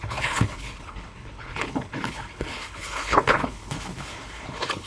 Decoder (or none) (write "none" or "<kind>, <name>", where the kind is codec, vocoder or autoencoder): codec, HILCodec